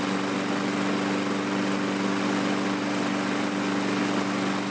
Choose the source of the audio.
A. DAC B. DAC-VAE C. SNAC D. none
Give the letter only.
D